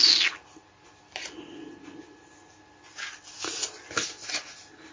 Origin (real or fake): real